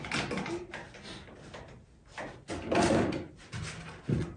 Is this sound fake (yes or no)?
no